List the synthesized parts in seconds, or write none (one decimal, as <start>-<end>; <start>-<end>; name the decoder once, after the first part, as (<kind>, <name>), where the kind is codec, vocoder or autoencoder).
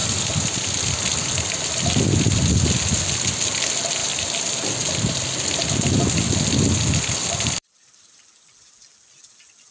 4.0-4.8 (vocoder, BigVGAN v2); 7.2-8.2